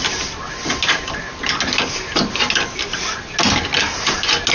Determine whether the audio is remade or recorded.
recorded